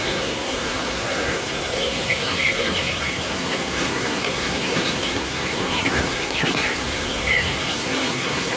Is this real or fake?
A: fake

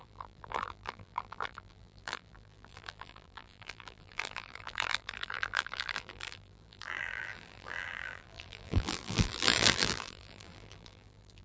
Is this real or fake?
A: fake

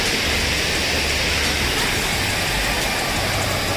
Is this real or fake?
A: real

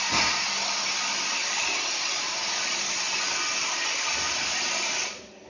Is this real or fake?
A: real